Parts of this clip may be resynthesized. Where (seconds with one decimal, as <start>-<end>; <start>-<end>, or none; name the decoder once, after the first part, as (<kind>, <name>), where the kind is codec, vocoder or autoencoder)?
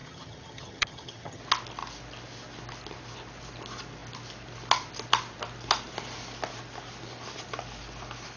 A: 0.0-1.4 (vocoder, HiFi-GAN)